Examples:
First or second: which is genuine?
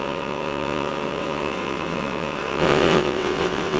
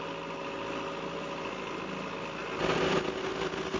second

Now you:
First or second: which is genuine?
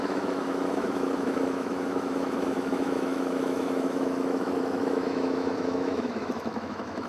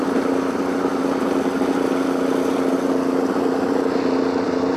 second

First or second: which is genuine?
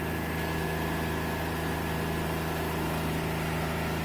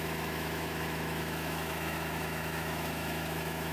first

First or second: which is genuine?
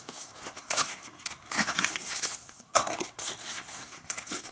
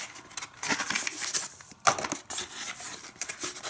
second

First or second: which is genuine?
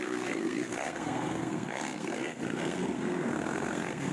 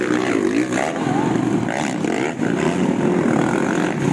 second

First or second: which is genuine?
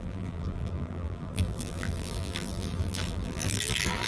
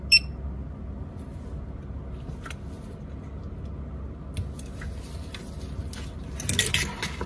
second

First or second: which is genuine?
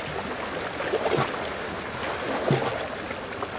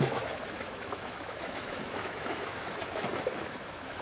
first